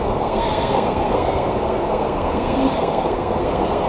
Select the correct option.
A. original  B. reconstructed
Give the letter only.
B